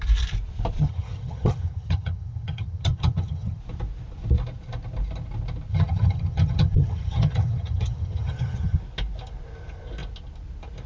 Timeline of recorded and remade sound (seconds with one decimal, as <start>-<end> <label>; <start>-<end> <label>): 0.0-0.8 recorded; 0.8-3.6 remade; 3.6-5.7 recorded; 5.7-8.8 remade; 8.8-10.9 recorded